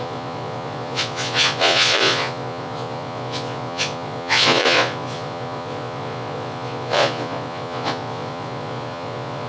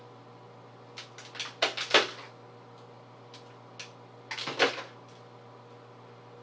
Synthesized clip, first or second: first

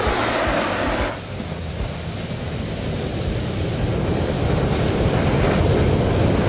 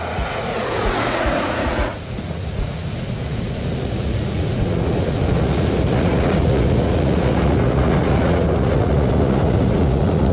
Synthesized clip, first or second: second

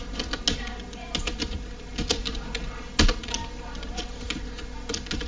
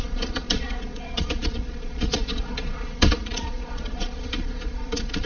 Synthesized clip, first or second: second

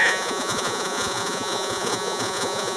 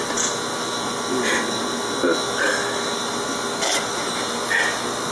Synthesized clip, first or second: first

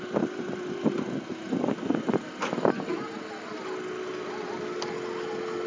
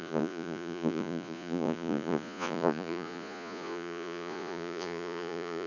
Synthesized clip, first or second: second